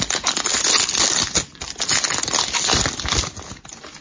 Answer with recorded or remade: recorded